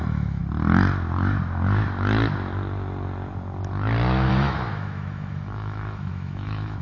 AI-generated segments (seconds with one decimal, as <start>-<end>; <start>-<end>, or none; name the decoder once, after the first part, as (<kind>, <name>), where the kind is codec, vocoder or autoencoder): 0.0-0.4 (autoencoder, DAC-VAE); 4.3-6.8